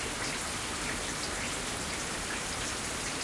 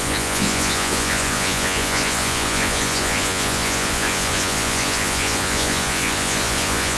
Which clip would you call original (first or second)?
first